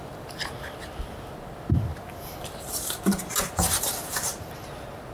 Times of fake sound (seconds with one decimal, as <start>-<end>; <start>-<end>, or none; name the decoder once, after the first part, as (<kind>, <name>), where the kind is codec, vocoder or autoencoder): 1.9-5.1 (vocoder, BigVGAN v2)